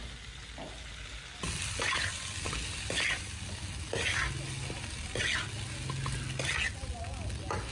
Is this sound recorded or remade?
recorded